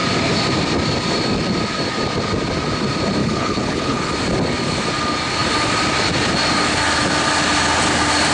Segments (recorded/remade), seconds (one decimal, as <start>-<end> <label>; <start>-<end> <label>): 0.0-3.2 recorded; 3.2-4.1 remade; 4.1-8.3 recorded